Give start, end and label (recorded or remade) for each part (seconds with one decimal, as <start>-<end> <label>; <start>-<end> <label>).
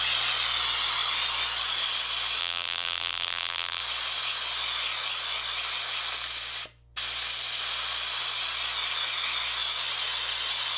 0.0-2.4 recorded; 2.4-3.8 remade; 3.8-10.8 recorded